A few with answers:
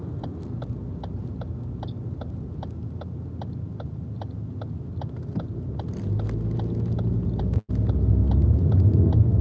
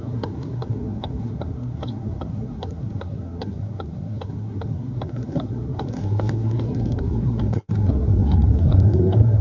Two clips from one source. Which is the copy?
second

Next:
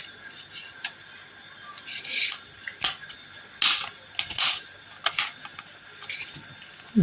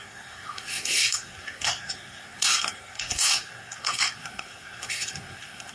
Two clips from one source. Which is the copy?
second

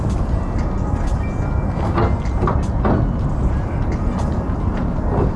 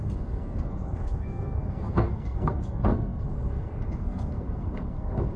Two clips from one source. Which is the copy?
second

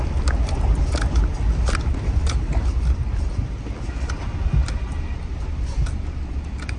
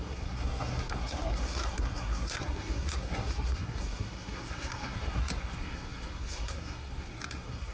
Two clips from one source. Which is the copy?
second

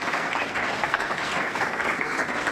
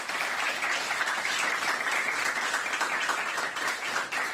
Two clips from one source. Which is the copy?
first